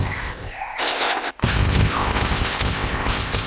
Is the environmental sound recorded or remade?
remade